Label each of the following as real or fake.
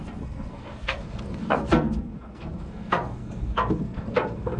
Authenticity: fake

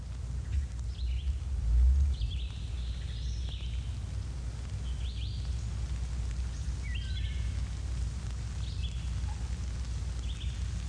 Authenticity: real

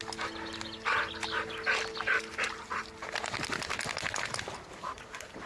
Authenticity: real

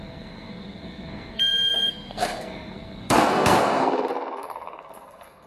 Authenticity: fake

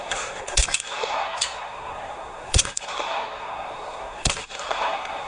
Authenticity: fake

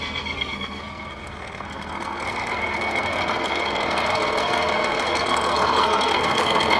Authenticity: fake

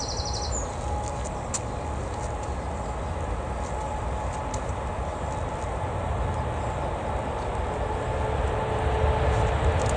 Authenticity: real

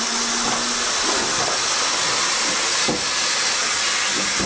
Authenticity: real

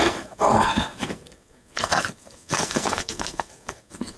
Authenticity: fake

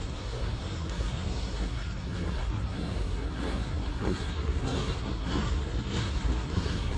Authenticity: fake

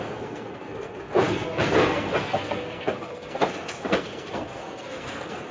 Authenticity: fake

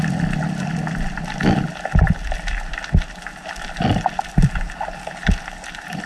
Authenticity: real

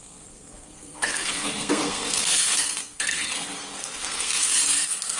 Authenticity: fake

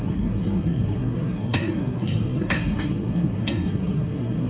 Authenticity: fake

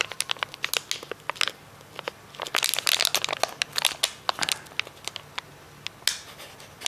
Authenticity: real